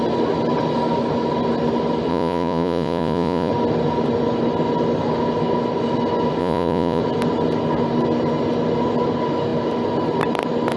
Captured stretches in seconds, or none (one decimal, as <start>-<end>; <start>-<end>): 0.0-2.1; 3.5-6.4; 7.0-10.8